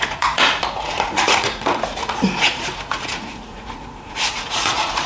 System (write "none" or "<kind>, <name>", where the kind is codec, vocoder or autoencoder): vocoder, Vocos